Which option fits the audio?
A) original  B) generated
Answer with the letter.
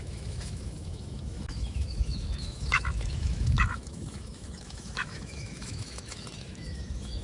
B